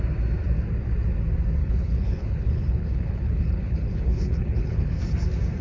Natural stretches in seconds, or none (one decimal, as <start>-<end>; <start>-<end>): 0.0-1.6; 5.0-5.6